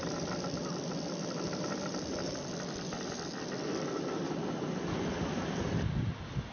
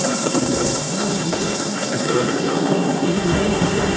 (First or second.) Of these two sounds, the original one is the first